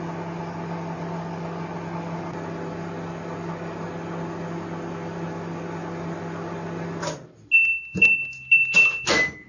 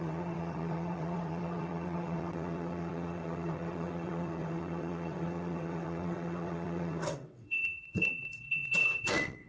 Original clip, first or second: first